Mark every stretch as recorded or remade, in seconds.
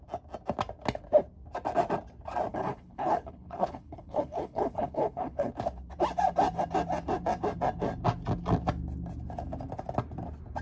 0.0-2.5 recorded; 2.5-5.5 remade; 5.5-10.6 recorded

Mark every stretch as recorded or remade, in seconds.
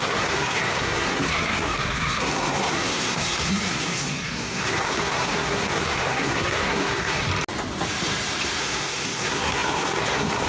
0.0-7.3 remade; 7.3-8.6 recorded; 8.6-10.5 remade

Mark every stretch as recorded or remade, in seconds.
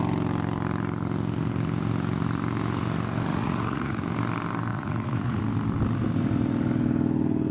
0.0-3.3 recorded; 3.3-4.0 remade; 4.0-4.7 recorded; 4.7-5.4 remade; 5.4-7.5 recorded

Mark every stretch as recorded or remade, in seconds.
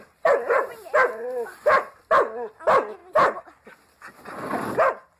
0.0-5.2 recorded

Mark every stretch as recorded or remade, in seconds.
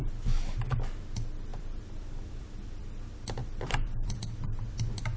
0.0-0.6 remade; 0.6-1.5 recorded; 1.5-2.8 remade; 2.8-3.4 recorded; 3.4-4.2 remade; 4.2-5.2 recorded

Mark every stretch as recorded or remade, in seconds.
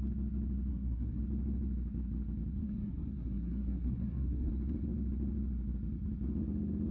0.0-0.7 recorded; 0.7-1.2 remade; 1.2-2.6 recorded; 2.6-4.5 remade; 4.5-6.9 recorded